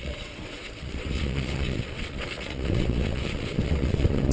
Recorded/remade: remade